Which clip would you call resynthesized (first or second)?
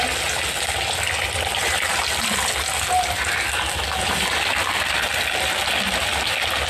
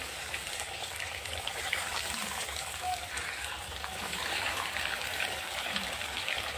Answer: second